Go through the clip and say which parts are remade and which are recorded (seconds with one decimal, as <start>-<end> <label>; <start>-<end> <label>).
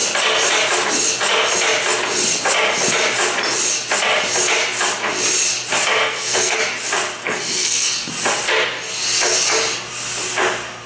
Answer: 0.0-6.0 recorded; 6.0-6.6 remade; 6.6-7.2 recorded; 7.2-8.1 remade; 8.1-10.9 recorded